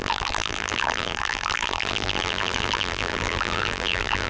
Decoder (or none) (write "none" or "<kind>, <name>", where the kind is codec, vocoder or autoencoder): vocoder, BigVGAN v2